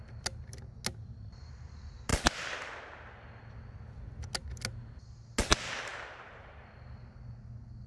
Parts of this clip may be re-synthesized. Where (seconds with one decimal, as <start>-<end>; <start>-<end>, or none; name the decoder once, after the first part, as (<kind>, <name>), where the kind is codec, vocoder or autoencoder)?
5.9-6.6 (vocoder, BigVGAN v2)